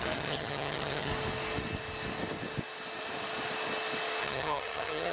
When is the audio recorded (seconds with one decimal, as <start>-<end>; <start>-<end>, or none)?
1.1-4.2